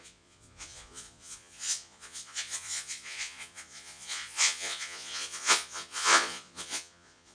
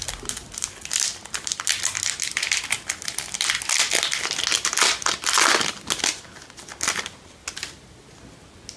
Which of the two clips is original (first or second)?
second